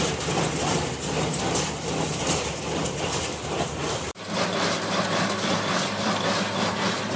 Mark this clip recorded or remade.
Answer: remade